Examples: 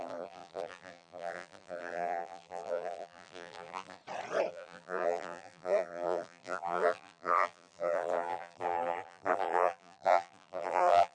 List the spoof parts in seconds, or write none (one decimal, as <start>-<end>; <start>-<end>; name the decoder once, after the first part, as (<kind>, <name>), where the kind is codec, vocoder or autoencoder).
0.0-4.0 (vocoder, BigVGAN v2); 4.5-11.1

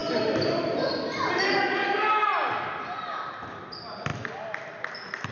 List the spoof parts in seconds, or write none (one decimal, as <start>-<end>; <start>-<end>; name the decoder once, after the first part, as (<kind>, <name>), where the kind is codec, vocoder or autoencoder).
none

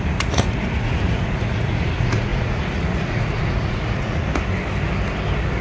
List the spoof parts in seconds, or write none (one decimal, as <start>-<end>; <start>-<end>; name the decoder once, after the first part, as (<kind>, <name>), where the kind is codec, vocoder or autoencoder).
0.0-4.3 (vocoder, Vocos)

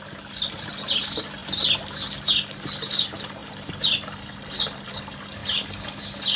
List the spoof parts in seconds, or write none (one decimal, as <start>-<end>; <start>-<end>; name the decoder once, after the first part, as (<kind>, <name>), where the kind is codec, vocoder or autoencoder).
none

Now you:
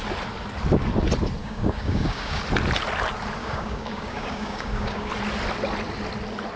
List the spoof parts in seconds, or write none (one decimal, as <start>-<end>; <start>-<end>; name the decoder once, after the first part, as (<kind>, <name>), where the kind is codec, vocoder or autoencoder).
1.4-2.4 (codec, DAC); 3.4-5.1

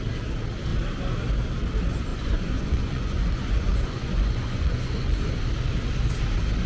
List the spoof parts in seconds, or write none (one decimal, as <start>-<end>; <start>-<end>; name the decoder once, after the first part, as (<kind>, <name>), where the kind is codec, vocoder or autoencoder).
2.1-5.4 (vocoder, Vocos)

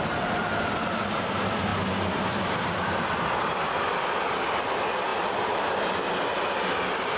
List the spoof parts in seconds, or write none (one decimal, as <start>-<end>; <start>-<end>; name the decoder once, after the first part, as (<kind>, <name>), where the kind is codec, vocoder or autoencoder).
none

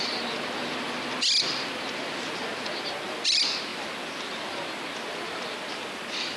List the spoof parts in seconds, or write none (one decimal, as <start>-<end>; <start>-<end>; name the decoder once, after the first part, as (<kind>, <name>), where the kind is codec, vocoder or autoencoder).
none